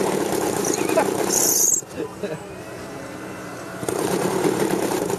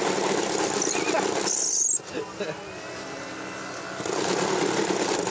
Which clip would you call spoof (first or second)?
first